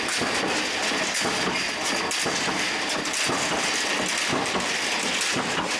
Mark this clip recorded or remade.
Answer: recorded